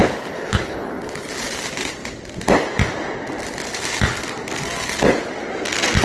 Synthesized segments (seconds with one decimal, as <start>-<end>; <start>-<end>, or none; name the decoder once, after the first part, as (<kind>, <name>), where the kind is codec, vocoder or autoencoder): 0.0-1.3 (codec, HILCodec)